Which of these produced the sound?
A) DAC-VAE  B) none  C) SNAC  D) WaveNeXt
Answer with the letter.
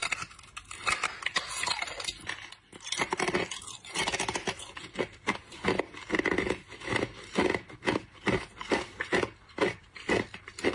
B